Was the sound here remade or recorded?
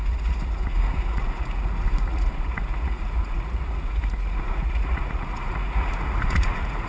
remade